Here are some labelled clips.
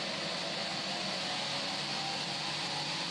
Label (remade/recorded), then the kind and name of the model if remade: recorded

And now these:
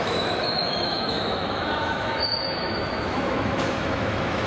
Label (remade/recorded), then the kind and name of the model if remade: remade, autoencoder, DAC-VAE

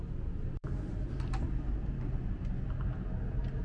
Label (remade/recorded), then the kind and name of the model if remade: recorded